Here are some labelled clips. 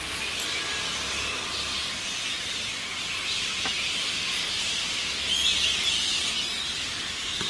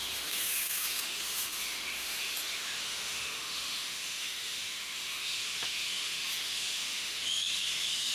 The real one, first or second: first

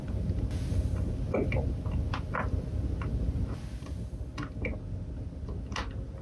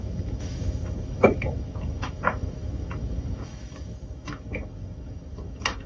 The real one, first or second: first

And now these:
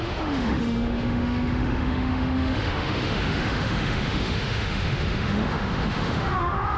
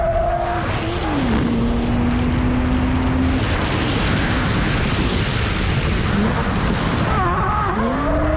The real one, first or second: second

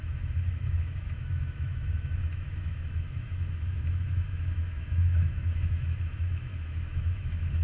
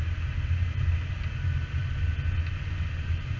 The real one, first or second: second